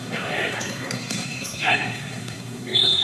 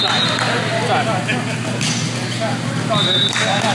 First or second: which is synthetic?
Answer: first